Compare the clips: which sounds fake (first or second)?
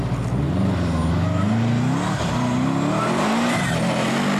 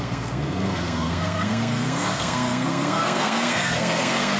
second